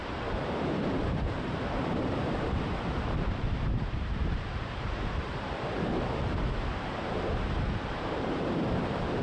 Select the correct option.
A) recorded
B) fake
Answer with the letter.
B